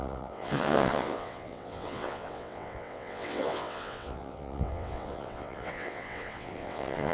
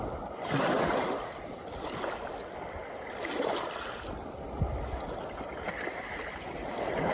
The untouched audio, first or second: second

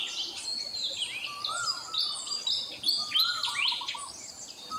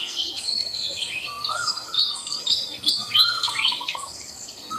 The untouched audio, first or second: first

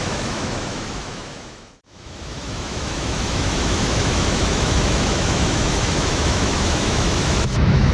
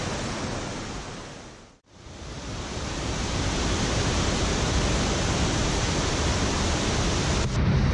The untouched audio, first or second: second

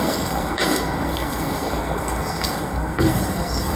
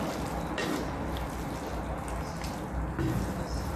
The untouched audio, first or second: second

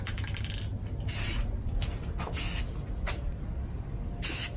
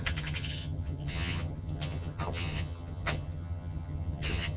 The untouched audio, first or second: first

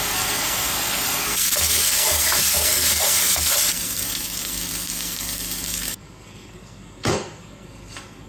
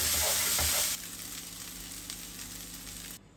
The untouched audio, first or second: second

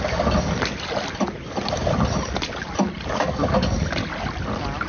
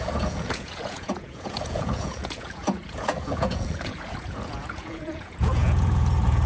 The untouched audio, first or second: first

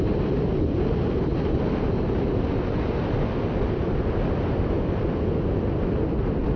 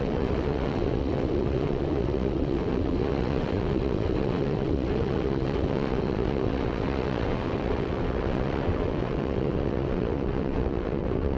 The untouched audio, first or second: first